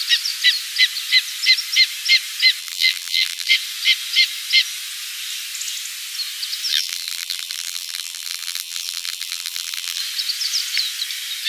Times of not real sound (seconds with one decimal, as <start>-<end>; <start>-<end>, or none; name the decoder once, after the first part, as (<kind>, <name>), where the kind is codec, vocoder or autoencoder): 2.6-3.5 (vocoder, BigVGAN v2); 6.7-10.0